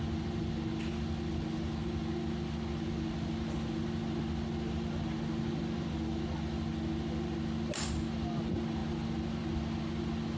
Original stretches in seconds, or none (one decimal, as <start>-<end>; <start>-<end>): 0.0-10.4

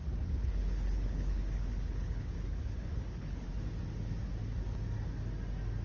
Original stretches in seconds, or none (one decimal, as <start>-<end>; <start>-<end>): 3.5-5.8

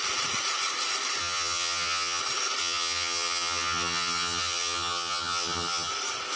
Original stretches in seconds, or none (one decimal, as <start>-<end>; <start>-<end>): 0.0-1.2; 2.2-2.6; 5.9-6.4

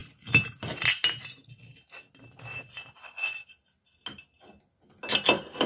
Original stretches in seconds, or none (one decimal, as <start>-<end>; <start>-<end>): 0.0-5.7

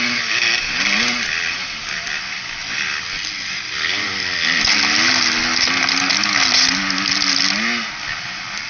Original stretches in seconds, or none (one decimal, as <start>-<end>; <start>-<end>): 0.0-8.7

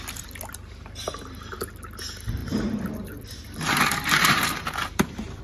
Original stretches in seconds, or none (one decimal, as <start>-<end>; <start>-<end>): 0.0-2.4